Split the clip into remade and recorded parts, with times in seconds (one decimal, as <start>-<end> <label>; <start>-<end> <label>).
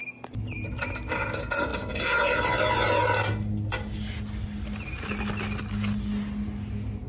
0.0-7.1 recorded